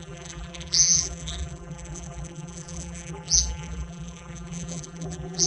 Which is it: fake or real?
fake